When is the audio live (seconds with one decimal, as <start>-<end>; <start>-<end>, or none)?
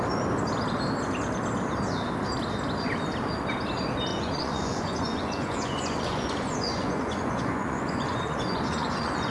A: 0.0-4.1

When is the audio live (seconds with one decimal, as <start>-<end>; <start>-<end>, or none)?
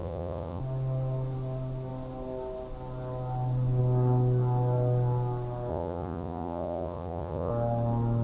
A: 0.6-5.7; 7.5-8.2